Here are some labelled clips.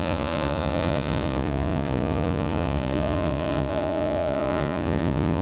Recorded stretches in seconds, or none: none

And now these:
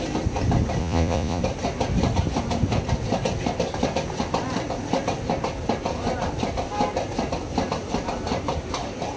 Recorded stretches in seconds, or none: 0.0-0.8; 1.4-9.2

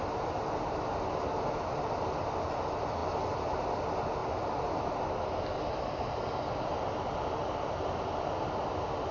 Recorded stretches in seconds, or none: 0.0-9.1

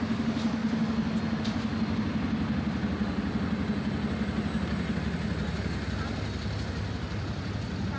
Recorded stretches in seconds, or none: 0.0-8.0

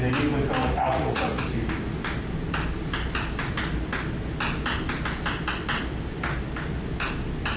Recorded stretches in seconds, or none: 0.0-0.6; 1.4-7.6

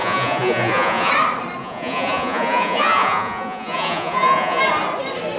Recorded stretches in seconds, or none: 1.1-1.6; 4.6-5.4

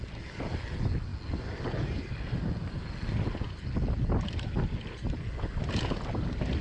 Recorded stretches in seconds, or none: 0.0-6.6

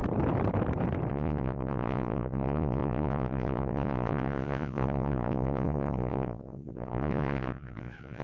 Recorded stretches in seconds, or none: 0.0-1.1